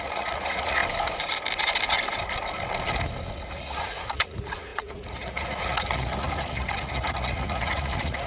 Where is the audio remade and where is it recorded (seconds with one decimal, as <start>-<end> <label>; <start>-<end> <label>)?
0.0-0.8 remade; 0.8-3.5 recorded; 3.5-8.3 remade